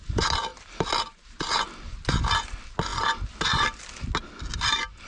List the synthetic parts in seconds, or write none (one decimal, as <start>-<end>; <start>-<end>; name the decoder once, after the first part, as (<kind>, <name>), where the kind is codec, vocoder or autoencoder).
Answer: none